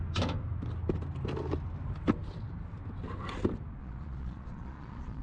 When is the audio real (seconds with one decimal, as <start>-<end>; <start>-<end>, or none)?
0.0-3.8